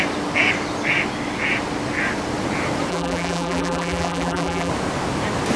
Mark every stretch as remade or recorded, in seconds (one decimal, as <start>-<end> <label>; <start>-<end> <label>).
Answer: 0.0-2.9 recorded; 2.9-4.7 remade; 4.7-5.6 recorded